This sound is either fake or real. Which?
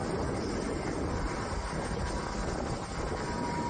real